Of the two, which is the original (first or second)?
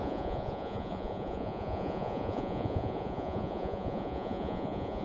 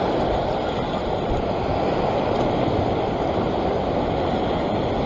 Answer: second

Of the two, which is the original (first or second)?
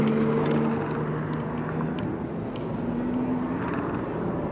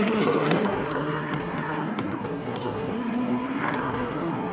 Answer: first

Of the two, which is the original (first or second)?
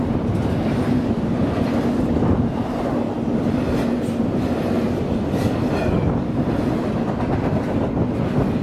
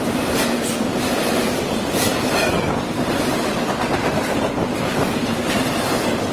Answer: first